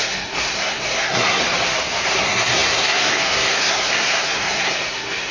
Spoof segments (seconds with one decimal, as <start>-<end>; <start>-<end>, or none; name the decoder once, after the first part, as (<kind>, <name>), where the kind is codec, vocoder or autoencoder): 0.0-1.4 (codec, SNAC); 2.2-5.3